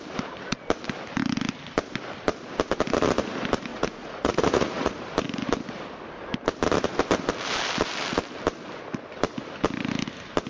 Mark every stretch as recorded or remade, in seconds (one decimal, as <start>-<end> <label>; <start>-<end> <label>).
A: 0.0-3.7 recorded; 3.7-5.0 remade; 5.0-10.5 recorded